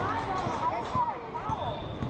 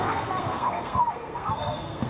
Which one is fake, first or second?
second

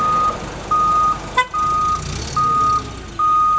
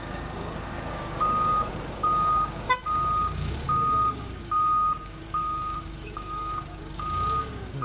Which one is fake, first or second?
second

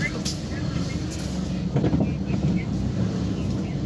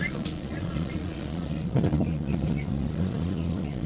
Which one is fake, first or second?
second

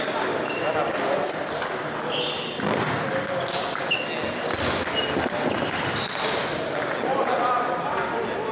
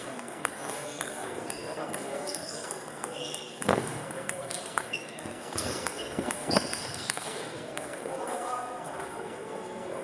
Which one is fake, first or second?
second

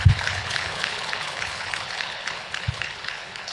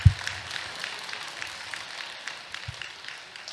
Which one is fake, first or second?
first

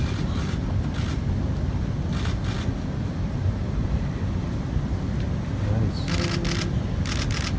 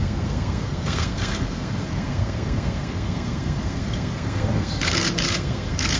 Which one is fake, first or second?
second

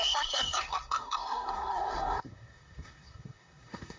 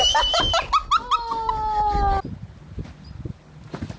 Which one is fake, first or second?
first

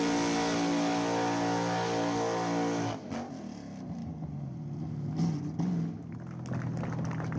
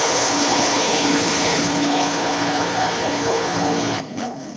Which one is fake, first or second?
second